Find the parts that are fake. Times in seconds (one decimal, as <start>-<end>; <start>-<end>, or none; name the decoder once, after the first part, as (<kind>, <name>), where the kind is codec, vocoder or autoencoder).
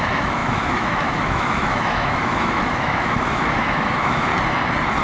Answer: 0.0-4.3 (autoencoder, DAC-VAE)